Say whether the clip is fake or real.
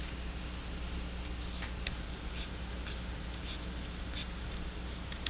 real